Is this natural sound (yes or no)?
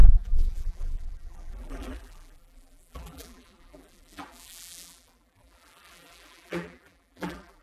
no